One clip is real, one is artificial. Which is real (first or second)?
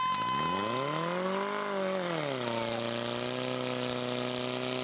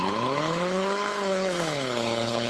first